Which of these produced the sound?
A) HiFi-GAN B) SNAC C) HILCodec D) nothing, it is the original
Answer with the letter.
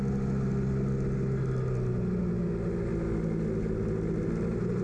D